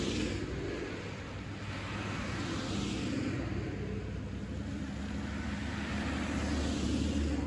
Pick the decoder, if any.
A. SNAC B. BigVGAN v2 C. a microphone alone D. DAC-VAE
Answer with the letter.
C